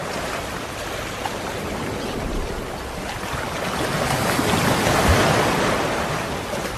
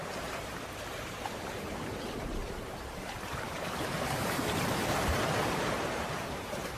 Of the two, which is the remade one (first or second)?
second